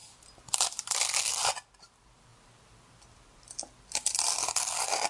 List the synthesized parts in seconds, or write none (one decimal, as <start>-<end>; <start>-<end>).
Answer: none